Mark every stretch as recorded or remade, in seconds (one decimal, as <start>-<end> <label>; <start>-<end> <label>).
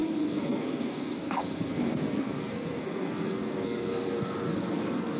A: 0.0-5.2 remade